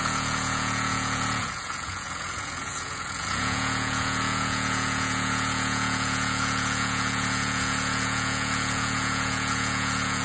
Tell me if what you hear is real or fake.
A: fake